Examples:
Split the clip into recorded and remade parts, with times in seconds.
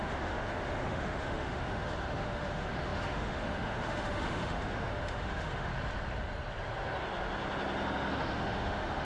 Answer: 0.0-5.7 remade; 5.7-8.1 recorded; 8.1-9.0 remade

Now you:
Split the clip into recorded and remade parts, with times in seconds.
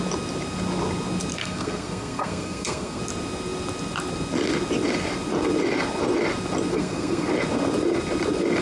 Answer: 0.0-1.4 recorded; 1.4-3.0 remade; 3.0-6.7 recorded; 6.7-7.3 remade; 7.3-8.6 recorded